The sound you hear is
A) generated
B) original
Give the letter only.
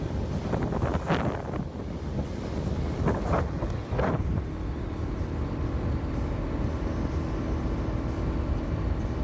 B